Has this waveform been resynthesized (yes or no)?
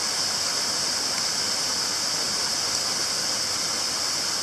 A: no